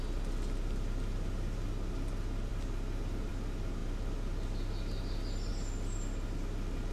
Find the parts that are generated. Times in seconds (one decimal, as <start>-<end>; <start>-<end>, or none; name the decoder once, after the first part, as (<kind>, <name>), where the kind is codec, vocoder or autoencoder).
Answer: none

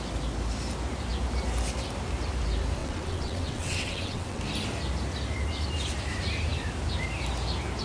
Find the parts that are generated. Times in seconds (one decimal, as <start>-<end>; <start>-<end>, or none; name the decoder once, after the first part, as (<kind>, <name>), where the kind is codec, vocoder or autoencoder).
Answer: 2.8-4.4 (vocoder, WaveNeXt)

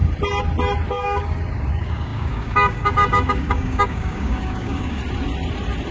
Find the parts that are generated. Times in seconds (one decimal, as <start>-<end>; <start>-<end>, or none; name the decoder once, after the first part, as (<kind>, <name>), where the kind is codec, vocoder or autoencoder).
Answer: 0.9-5.0 (codec, DAC)

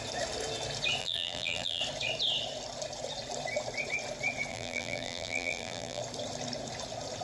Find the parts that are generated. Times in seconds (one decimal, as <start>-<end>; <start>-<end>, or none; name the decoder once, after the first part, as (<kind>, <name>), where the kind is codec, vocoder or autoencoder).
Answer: 1.0-1.8 (vocoder, BigVGAN v2); 4.5-6.0

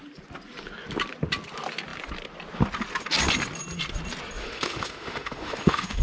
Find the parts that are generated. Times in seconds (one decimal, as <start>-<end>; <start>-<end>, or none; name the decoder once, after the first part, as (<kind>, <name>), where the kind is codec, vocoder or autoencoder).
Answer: 4.4-6.0 (autoencoder, DAC-VAE)

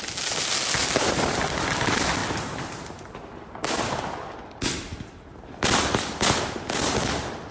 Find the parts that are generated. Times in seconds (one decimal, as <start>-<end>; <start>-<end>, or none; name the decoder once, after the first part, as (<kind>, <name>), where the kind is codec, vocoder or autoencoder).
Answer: 0.8-1.4 (vocoder, BigVGAN v2); 2.2-3.0